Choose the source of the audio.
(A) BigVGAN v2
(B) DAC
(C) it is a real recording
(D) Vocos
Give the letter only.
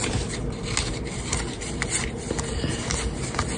C